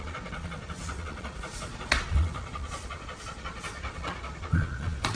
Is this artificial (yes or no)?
yes